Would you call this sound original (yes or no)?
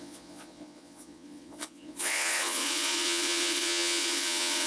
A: no